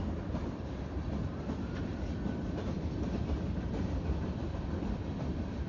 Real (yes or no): no